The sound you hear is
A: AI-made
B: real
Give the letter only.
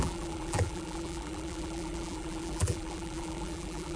A